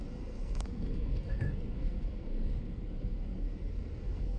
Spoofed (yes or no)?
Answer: yes